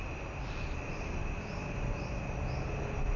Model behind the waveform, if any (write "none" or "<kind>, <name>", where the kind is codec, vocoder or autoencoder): none